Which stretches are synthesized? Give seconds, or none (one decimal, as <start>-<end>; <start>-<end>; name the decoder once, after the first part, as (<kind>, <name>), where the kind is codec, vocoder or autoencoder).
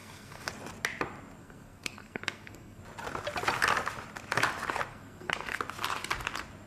0.0-0.5 (codec, SNAC); 1.4-2.8; 4.9-5.6